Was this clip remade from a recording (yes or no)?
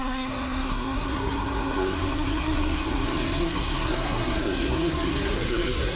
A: yes